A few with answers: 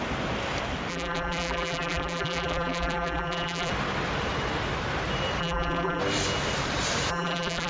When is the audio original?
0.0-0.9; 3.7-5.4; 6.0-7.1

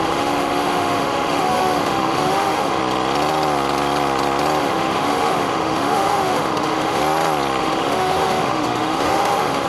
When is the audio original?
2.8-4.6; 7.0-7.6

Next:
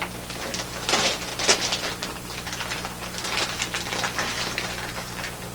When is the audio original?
1.3-4.6

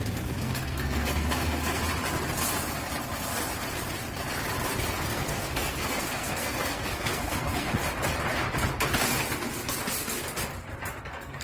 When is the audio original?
1.8-4.9; 7.8-11.0

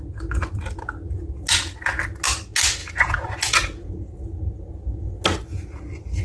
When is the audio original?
0.0-2.8; 3.9-6.2

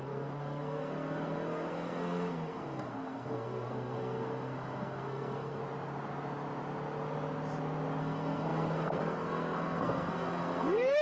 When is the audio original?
5.6-8.0

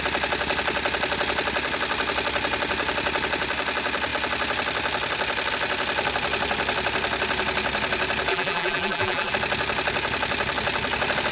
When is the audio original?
0.0-8.3; 9.3-11.3

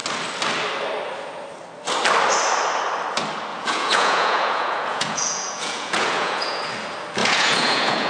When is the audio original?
0.0-3.5; 6.7-7.2